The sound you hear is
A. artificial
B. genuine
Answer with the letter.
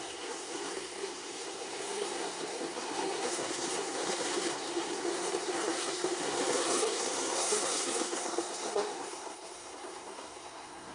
A